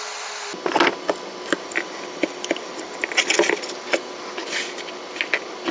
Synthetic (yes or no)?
no